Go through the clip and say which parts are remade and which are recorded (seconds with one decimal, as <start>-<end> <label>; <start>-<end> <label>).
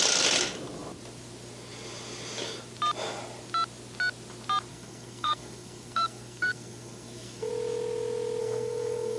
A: 0.0-4.7 recorded; 4.7-7.5 remade; 7.5-8.4 recorded; 8.4-9.2 remade